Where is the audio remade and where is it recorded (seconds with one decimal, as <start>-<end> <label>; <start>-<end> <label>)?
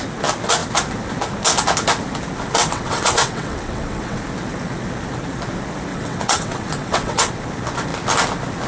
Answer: 0.0-2.6 recorded; 2.6-4.2 remade; 4.2-5.9 recorded; 5.9-7.3 remade; 7.3-8.7 recorded